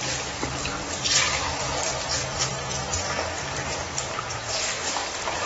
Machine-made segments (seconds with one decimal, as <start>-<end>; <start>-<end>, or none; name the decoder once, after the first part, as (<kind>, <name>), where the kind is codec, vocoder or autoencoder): none